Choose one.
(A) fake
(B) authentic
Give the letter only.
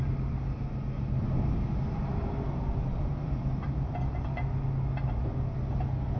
B